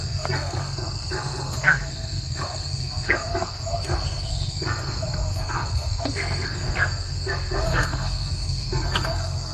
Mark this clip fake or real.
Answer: fake